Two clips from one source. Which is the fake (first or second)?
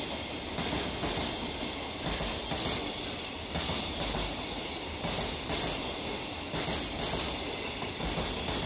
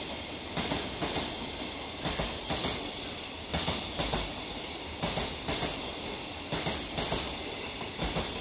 second